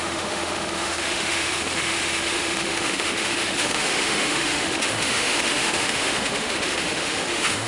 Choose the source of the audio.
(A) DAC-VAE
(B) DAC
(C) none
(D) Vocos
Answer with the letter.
A